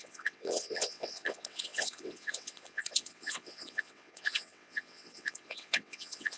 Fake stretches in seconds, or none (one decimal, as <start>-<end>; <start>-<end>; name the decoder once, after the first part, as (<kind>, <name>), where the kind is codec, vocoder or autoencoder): 0.0-6.4 (vocoder, WaveNeXt)